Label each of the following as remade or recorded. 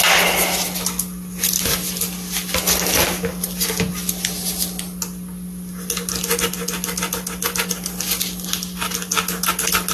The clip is recorded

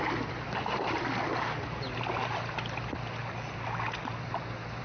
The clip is recorded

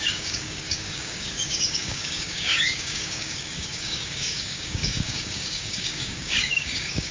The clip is remade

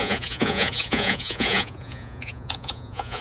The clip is remade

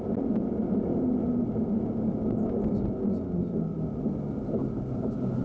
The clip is recorded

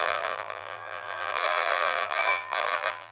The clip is remade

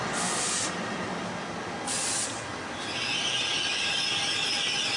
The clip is recorded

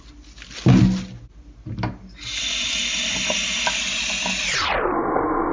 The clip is recorded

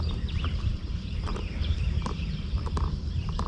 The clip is remade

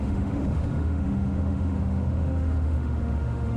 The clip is remade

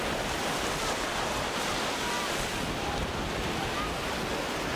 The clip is recorded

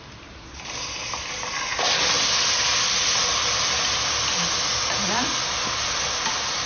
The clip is recorded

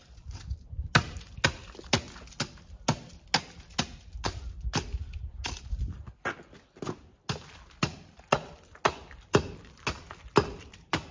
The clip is recorded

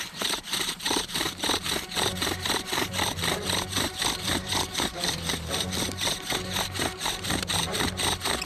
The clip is remade